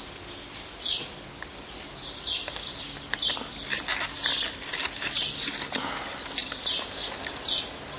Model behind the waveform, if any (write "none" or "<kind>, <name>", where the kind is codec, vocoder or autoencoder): none